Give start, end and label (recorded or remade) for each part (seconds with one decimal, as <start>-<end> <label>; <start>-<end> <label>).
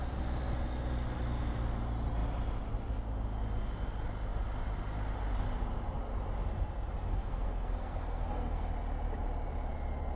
0.0-7.1 recorded; 7.1-8.7 remade; 8.7-10.2 recorded